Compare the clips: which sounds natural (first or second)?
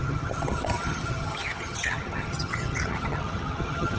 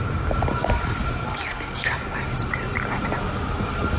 second